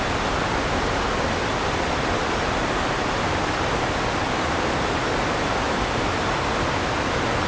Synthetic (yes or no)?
no